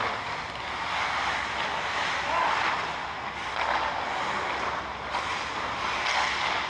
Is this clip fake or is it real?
real